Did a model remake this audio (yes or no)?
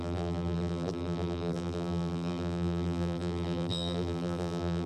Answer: yes